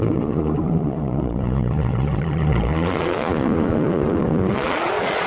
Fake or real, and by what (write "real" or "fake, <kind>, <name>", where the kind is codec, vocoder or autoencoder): fake, vocoder, Vocos